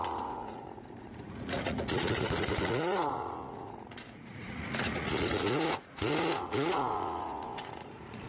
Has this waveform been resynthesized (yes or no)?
yes